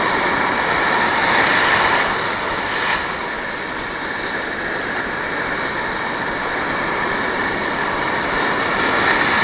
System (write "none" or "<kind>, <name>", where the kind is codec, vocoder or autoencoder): none